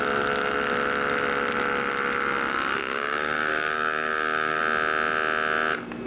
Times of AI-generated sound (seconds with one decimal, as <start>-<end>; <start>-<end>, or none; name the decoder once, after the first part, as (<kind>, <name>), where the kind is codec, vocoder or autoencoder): 2.8-4.6 (codec, DAC)